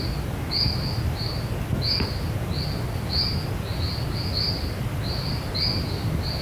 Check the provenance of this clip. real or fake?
real